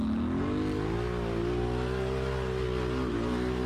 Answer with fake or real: real